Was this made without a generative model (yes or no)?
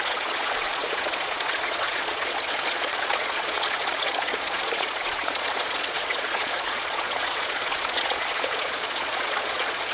no